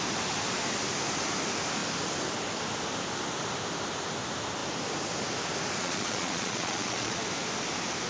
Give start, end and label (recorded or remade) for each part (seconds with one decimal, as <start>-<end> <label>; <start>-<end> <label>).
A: 0.0-5.8 recorded; 5.8-7.2 remade; 7.2-8.1 recorded

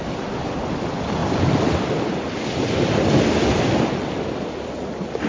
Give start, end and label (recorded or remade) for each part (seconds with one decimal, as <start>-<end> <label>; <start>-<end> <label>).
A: 0.0-5.3 recorded

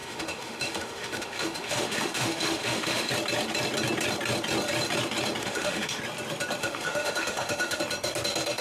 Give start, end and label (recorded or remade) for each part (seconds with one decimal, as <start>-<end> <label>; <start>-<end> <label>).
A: 0.0-3.1 remade; 3.1-5.4 recorded; 5.4-6.0 remade; 6.0-6.6 recorded; 6.6-7.8 remade; 7.8-8.6 recorded

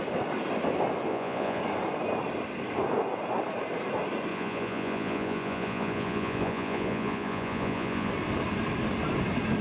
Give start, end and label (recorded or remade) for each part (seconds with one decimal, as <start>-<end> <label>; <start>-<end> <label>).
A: 0.0-1.1 recorded; 1.1-1.6 remade; 1.6-4.3 recorded; 4.3-8.1 remade; 8.1-9.6 recorded

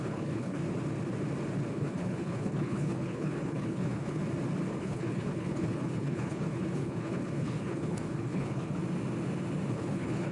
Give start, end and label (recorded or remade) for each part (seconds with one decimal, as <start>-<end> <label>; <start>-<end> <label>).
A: 0.0-0.6 remade; 0.6-1.7 recorded; 1.7-4.2 remade; 4.2-4.7 recorded; 4.7-8.8 remade; 8.8-9.7 recorded; 9.7-10.3 remade

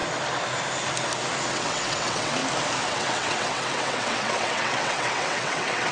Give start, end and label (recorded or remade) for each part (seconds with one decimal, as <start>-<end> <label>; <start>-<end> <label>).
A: 0.0-1.5 recorded; 1.5-2.4 remade; 2.4-2.9 recorded; 2.9-5.9 remade

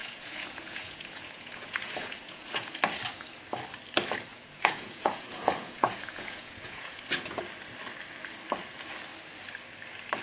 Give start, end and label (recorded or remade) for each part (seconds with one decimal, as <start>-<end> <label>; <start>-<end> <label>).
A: 0.0-2.8 remade; 2.8-4.3 recorded; 4.3-7.4 remade; 7.4-10.2 recorded

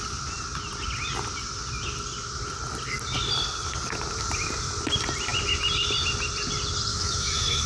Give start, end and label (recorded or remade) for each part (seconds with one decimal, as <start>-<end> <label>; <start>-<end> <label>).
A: 0.0-6.9 recorded; 6.9-7.7 remade